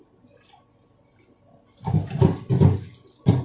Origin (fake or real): real